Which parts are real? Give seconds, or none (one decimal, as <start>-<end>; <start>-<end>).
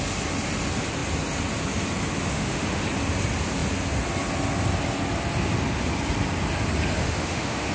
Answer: 0.0-2.3; 2.8-7.0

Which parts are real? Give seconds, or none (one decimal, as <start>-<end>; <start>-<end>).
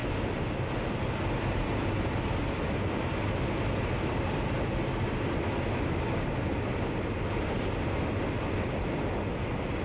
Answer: 0.0-9.8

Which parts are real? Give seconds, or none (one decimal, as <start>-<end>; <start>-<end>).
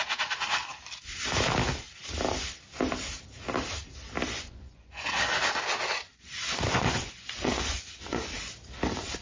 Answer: 0.0-4.3; 5.2-6.1; 8.3-9.2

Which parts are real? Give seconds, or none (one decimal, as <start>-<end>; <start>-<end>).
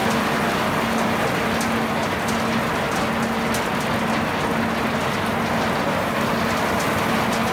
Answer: 0.0-7.5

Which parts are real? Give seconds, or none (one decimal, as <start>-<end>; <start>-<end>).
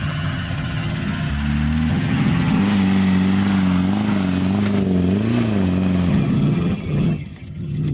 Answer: 1.3-1.9; 2.6-6.1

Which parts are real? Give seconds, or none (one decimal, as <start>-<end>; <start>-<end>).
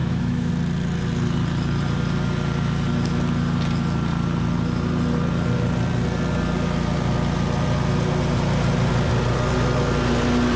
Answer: 0.5-10.6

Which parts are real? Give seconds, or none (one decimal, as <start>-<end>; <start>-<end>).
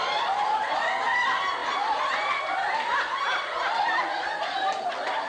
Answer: 0.0-5.3